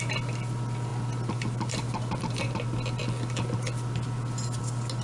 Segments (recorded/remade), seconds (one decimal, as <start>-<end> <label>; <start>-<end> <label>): 0.0-5.0 recorded